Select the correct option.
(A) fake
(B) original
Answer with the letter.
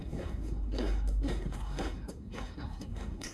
A